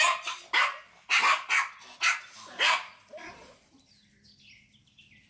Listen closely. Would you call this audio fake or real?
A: real